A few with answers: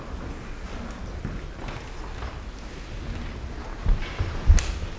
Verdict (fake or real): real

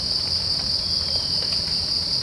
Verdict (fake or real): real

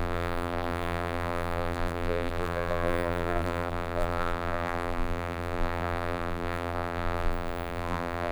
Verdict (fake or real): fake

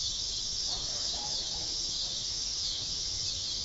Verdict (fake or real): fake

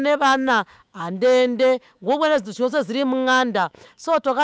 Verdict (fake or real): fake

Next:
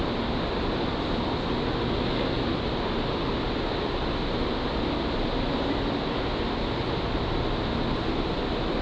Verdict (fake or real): real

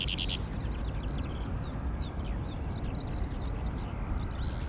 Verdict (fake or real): real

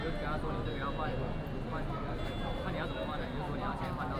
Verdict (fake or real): real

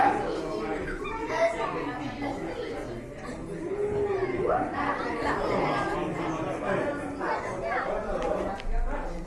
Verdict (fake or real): real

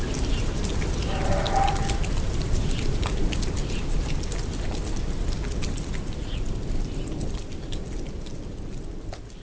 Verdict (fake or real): fake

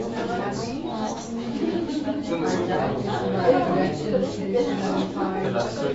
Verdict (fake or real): fake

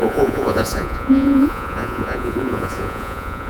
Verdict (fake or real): fake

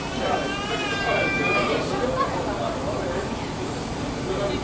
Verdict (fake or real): real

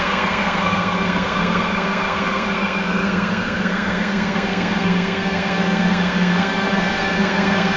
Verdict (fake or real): fake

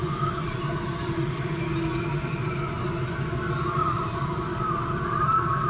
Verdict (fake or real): real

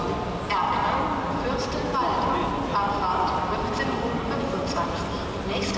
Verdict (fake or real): real